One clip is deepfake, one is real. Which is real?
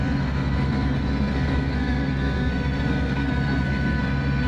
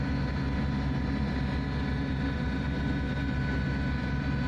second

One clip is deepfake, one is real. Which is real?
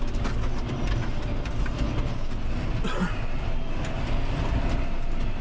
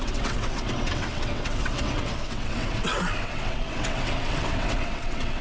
first